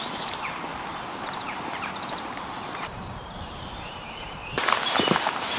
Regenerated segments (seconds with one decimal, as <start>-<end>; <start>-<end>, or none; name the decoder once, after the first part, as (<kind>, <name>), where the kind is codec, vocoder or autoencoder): 0.9-4.3 (vocoder, BigVGAN v2)